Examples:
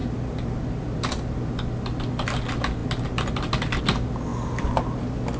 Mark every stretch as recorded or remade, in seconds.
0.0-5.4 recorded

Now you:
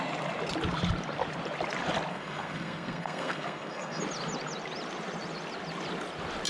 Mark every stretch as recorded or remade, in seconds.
0.0-2.1 recorded; 2.1-4.0 remade; 4.0-6.5 recorded

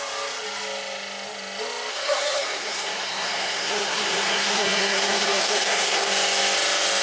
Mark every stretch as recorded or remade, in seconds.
0.0-1.9 recorded; 1.9-6.1 remade; 6.1-7.0 recorded

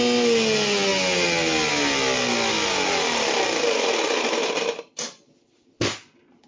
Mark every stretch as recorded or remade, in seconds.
0.0-6.5 recorded

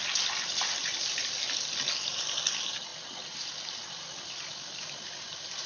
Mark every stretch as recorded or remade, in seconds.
0.0-5.7 recorded

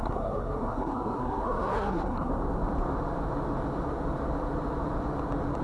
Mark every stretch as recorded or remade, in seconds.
0.0-2.3 remade; 2.3-5.6 recorded

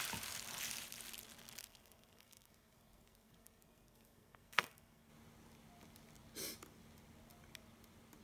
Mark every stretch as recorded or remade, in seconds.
0.0-1.6 recorded; 1.6-5.1 remade; 5.1-8.2 recorded